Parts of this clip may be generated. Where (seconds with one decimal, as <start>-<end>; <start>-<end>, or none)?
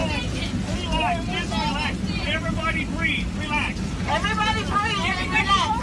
none